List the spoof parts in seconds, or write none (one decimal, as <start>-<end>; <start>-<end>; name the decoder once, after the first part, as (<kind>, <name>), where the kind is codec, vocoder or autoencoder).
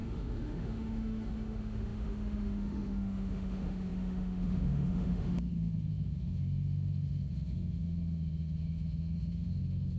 0.0-10.0 (autoencoder, DAC-VAE)